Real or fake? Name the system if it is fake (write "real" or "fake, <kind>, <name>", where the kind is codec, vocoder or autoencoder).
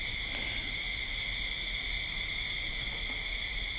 real